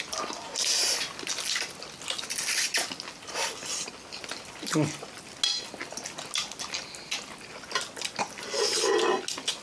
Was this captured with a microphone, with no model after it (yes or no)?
yes